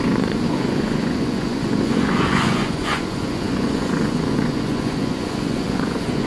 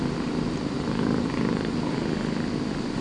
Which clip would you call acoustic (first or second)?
second